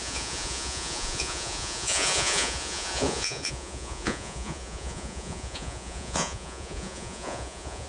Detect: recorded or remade remade